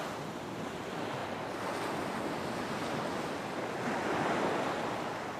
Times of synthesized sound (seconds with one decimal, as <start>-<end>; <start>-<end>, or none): none